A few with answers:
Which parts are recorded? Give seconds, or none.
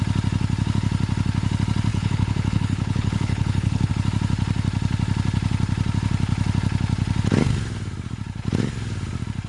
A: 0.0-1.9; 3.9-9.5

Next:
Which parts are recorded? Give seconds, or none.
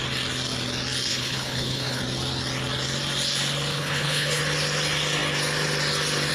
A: 0.0-1.1; 2.0-3.7; 4.4-6.3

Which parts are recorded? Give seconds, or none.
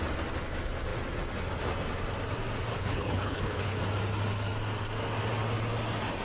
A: 0.0-2.7; 3.8-6.2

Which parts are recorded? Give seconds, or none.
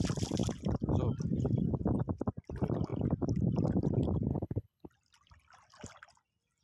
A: 0.0-4.3; 4.9-6.6